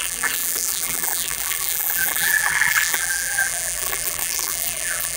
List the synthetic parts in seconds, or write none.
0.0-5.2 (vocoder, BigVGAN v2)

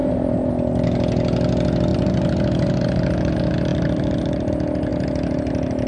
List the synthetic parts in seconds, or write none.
0.0-0.5 (vocoder, BigVGAN v2); 1.9-3.3; 3.7-4.5

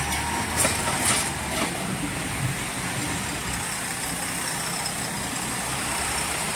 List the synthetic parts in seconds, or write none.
none

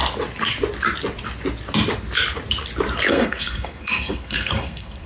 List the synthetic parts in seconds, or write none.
3.1-5.1 (codec, SNAC)

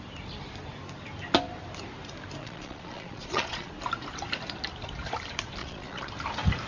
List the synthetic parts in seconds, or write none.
2.4-3.7 (vocoder, Vocos); 5.6-6.1

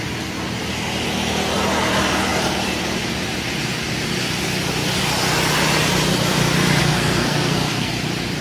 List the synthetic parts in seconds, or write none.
6.8-7.9 (codec, SNAC)

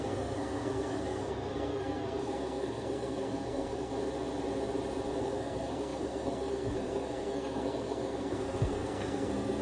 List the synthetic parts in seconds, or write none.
0.0-3.9 (codec, SNAC); 5.2-9.6

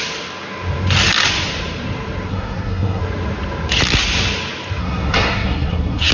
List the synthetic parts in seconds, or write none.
2.3-3.0 (codec, SNAC); 4.8-6.1